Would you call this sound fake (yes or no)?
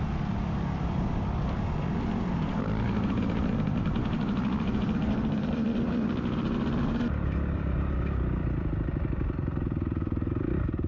yes